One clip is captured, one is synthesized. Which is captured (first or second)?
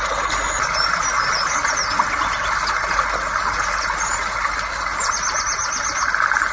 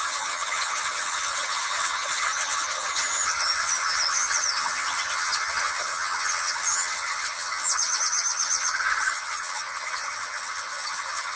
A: first